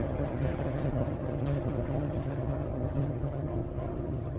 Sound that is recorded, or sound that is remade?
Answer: remade